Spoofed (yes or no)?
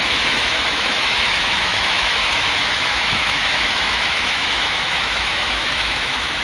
yes